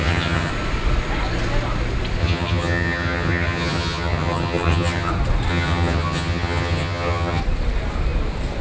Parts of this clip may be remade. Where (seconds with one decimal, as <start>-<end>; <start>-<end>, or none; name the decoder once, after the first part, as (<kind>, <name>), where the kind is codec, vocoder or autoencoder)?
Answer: 0.0-0.5 (vocoder, HiFi-GAN); 2.2-5.1; 5.5-7.4